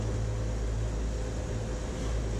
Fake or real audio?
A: real